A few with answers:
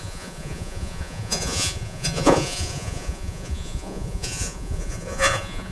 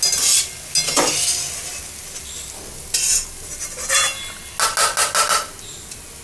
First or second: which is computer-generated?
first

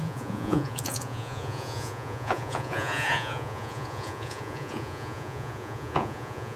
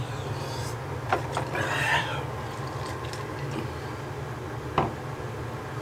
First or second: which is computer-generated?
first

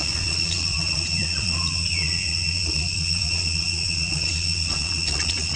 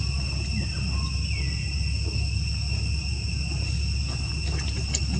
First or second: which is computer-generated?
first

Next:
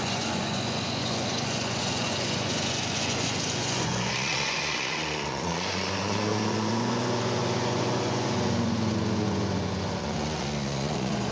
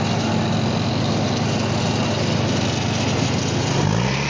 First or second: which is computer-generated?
first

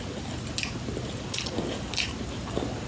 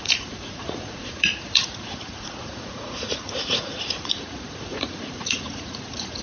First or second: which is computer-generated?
second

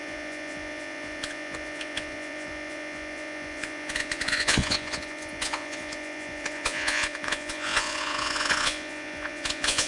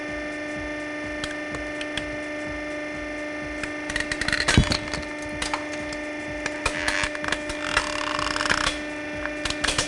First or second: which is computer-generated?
first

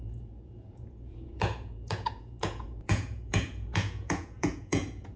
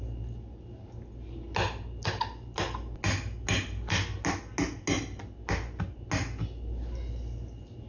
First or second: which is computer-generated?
first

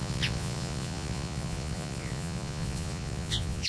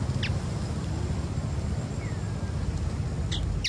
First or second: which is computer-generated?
first